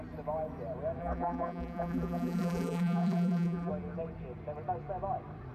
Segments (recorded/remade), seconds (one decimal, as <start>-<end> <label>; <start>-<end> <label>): 0.0-1.0 recorded; 1.0-3.7 remade; 3.7-5.5 recorded